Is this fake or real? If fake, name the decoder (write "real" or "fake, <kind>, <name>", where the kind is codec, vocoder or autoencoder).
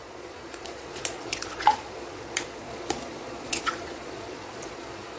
fake, vocoder, Vocos